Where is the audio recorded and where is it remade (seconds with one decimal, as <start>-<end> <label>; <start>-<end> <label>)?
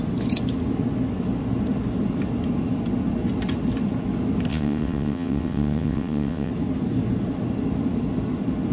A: 0.0-4.5 recorded; 4.5-6.5 remade; 6.5-8.7 recorded